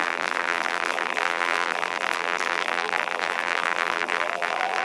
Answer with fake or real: fake